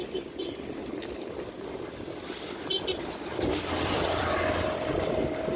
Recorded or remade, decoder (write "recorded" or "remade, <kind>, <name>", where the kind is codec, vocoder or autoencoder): remade, vocoder, BigVGAN v2